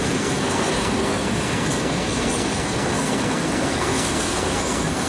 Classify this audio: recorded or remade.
remade